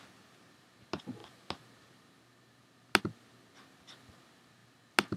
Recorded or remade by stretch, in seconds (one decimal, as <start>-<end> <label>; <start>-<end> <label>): 0.0-5.2 recorded